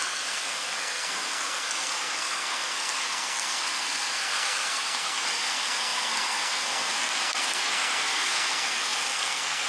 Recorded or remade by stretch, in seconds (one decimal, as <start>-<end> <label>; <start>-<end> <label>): 0.0-9.7 remade